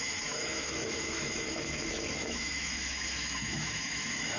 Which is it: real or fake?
fake